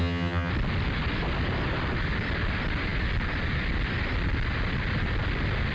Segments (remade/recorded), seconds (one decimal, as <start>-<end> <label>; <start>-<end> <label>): 0.0-0.5 remade; 0.5-5.7 recorded